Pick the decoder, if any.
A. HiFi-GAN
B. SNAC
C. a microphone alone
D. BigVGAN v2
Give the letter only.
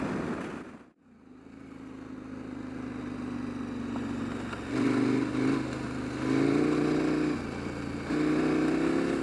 C